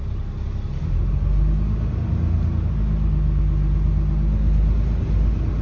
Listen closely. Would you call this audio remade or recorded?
recorded